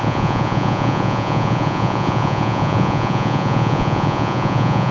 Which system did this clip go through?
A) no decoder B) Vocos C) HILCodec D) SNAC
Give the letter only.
B